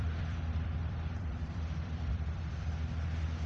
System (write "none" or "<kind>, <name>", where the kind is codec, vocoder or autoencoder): vocoder, BigVGAN v2